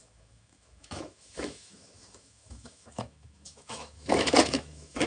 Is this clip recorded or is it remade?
remade